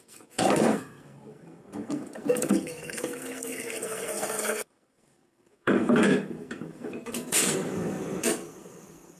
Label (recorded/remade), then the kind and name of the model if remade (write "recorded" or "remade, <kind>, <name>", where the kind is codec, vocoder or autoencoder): remade, codec, SNAC